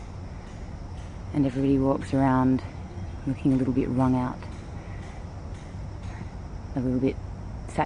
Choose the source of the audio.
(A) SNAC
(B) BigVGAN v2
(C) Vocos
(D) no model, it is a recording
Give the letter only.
D